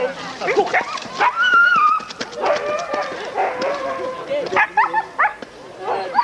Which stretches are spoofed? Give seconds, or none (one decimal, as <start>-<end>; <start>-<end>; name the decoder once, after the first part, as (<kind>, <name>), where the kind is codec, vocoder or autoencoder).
0.7-1.9 (vocoder, BigVGAN v2); 5.3-6.2